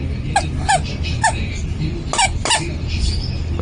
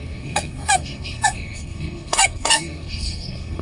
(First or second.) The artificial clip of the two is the second